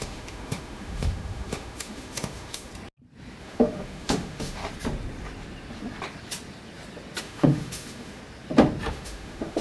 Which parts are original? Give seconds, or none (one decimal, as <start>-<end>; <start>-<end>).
2.7-3.4; 4.6-7.2; 8.2-8.9